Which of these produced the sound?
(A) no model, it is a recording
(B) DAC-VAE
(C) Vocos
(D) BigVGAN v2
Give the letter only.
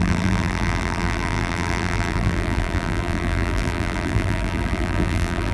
D